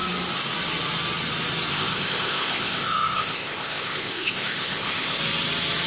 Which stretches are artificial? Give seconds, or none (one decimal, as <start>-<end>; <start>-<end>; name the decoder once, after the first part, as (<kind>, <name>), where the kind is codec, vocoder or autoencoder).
1.7-5.2 (codec, ZipCodec)